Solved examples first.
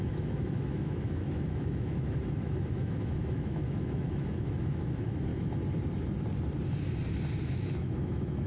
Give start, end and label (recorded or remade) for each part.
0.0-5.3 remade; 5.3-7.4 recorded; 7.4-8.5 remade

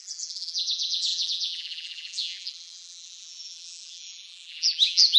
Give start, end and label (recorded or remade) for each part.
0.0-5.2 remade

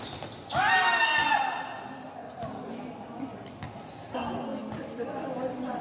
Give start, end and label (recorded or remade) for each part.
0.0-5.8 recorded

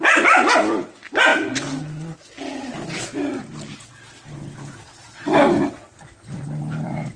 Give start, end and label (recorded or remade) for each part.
0.0-7.2 recorded

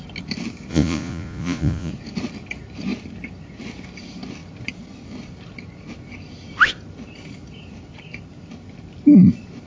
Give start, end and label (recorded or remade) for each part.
0.0-0.7 recorded; 0.7-1.9 remade; 1.9-9.7 recorded

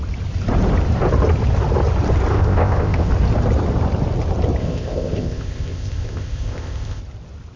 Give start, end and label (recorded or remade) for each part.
0.0-2.3 recorded; 2.3-3.1 remade; 3.1-4.6 recorded; 4.6-7.0 remade; 7.0-7.6 recorded

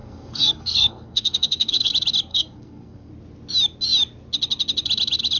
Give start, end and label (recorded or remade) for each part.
0.0-1.9 remade; 1.9-2.3 recorded; 2.3-3.1 remade; 3.1-5.4 recorded

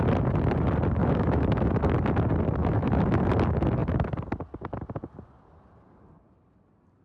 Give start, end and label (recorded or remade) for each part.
0.0-1.0 recorded; 1.0-1.9 remade; 1.9-2.6 recorded; 2.6-3.3 remade; 3.3-7.0 recorded